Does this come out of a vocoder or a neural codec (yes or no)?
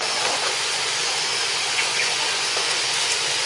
yes